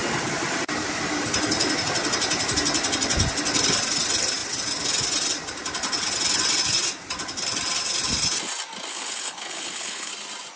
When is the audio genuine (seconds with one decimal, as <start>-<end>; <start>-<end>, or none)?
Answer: 0.0-8.9; 10.1-10.6